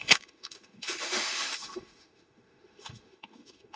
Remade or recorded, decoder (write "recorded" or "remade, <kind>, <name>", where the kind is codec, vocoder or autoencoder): remade, autoencoder, DAC-VAE